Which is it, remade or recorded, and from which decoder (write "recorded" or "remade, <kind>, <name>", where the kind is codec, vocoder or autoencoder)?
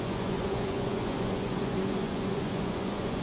remade, vocoder, Vocos